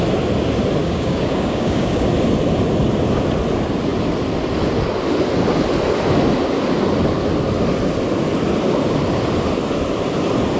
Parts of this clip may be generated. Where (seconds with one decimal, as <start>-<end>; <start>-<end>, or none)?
0.8-2.1

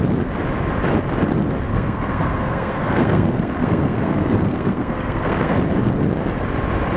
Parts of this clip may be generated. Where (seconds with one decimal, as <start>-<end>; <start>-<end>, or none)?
1.7-5.6